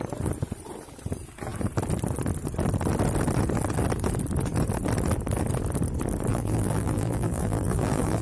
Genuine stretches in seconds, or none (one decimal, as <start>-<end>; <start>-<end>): 0.0-6.3